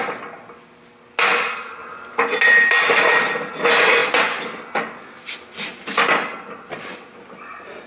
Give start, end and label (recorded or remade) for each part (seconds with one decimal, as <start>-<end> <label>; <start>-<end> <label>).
0.0-7.9 recorded